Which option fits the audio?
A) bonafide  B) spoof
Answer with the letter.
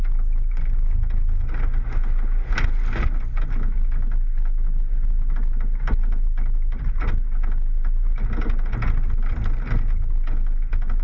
A